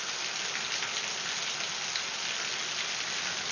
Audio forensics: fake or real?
real